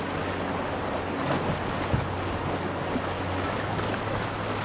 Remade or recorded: recorded